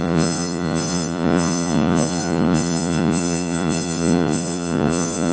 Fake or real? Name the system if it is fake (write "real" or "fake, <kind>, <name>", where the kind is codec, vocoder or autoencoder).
fake, vocoder, Vocos